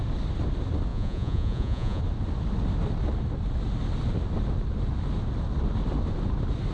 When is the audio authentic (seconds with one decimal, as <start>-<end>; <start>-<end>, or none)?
0.0-0.9; 2.0-6.7